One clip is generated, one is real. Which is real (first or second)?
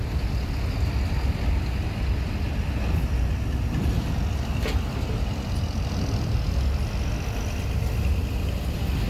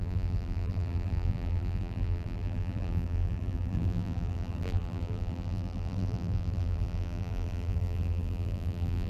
first